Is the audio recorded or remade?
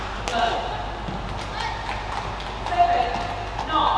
recorded